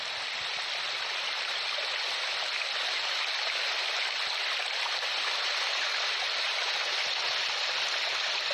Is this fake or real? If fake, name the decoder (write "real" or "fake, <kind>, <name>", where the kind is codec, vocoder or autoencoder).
real